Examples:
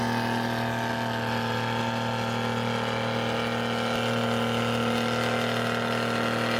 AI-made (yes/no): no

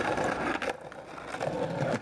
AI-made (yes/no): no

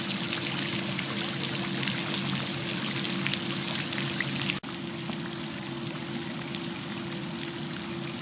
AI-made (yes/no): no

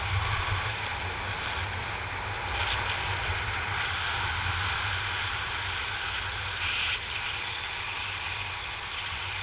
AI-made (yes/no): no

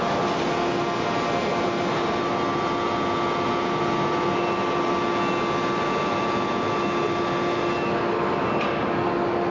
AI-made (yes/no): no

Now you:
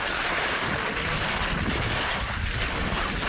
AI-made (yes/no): no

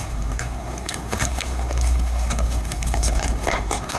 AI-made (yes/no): yes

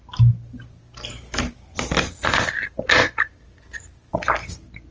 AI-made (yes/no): no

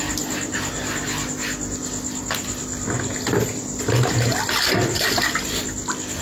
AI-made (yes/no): no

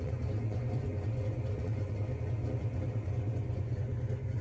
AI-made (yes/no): yes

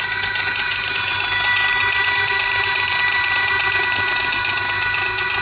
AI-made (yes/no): no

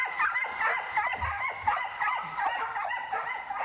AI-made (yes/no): no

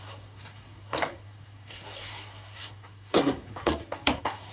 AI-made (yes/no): yes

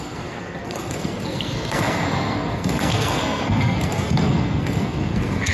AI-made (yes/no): yes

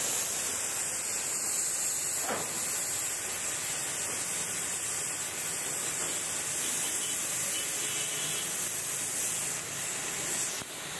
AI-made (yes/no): no